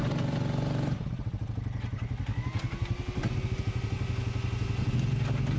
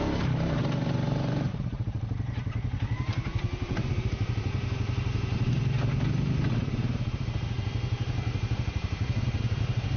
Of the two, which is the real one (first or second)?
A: first